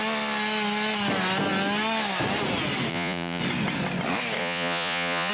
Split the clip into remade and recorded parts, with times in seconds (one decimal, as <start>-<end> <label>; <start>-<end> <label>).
0.0-2.9 recorded; 2.9-3.4 remade; 3.4-4.4 recorded; 4.4-5.3 remade

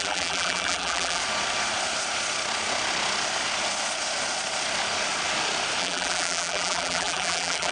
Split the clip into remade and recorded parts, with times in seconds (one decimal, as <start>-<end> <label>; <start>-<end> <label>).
0.0-1.2 remade; 1.2-5.8 recorded; 5.8-7.7 remade

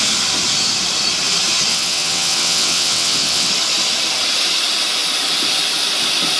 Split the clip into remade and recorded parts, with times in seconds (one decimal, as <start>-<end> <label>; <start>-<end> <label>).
0.0-1.7 recorded; 1.7-3.5 remade; 3.5-6.4 recorded

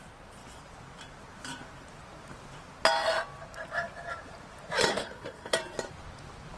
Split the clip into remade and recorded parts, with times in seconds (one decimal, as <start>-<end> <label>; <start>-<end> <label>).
0.0-4.9 recorded; 4.9-5.5 remade; 5.5-6.6 recorded

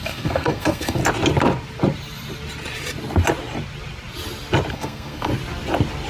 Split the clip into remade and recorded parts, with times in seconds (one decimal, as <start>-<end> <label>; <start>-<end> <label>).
0.0-1.0 remade; 1.0-4.7 recorded; 4.7-5.3 remade; 5.3-6.1 recorded

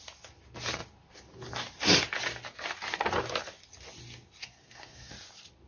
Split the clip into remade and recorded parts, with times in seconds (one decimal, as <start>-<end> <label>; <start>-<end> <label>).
0.0-4.4 recorded; 4.4-5.1 remade; 5.1-5.7 recorded

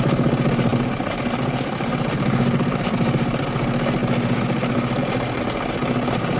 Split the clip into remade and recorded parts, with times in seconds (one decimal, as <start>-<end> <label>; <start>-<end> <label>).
0.0-6.4 recorded

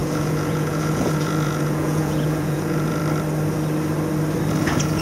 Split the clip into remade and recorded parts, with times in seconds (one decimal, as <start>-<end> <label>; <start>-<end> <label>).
0.0-3.0 remade; 3.0-4.6 recorded; 4.6-5.0 remade